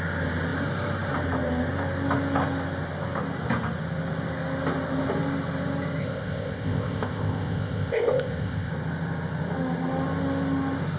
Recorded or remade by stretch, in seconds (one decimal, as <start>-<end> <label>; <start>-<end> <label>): 0.0-6.0 recorded; 6.0-8.7 remade; 8.7-11.0 recorded